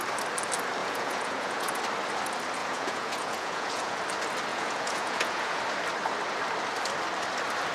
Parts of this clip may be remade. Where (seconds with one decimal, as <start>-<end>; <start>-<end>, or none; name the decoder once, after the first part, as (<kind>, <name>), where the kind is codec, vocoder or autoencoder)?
0.8-1.8 (vocoder, Vocos); 2.6-4.0; 4.5-5.6